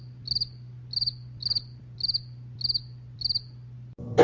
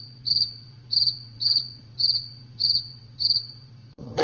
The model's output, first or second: second